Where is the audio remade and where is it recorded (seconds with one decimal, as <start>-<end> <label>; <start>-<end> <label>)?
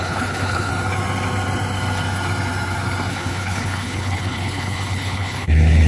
0.0-0.7 remade; 0.7-3.1 recorded; 3.1-5.9 remade